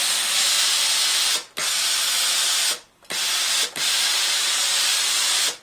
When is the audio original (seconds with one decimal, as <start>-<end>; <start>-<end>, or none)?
0.0-5.6